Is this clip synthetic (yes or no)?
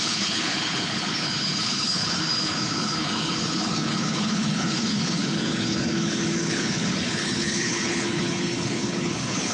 yes